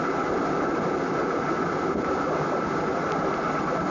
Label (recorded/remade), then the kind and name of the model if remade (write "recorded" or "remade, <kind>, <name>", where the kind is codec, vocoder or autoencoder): recorded